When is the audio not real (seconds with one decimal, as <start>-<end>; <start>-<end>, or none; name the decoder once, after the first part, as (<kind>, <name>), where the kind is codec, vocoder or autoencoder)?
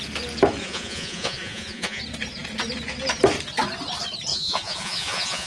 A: 0.6-2.0 (vocoder, Vocos); 4.3-5.5